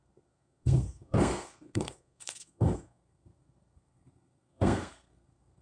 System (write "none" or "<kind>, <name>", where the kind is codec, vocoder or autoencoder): codec, SNAC